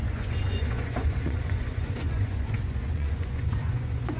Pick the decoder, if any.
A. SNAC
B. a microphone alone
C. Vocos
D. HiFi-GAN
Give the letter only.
C